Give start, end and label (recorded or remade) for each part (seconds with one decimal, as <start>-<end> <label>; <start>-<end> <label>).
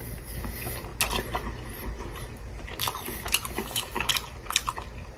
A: 0.0-3.6 recorded; 3.6-4.1 remade; 4.1-5.2 recorded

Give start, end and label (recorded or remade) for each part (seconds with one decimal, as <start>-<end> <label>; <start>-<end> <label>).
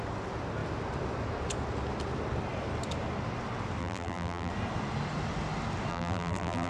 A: 0.0-3.8 recorded; 3.8-4.5 remade; 4.5-5.9 recorded; 5.9-6.7 remade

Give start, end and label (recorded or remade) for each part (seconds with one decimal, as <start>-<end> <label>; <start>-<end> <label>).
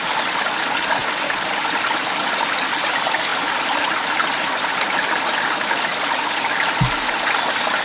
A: 0.0-7.8 recorded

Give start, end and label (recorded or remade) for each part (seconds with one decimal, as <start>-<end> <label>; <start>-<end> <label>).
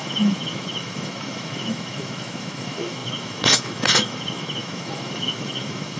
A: 0.0-6.0 remade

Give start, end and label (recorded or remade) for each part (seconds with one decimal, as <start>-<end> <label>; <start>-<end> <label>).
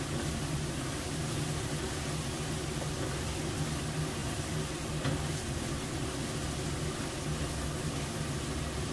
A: 0.0-4.2 recorded; 4.2-5.0 remade; 5.0-8.9 recorded